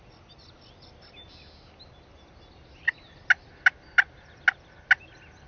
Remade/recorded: recorded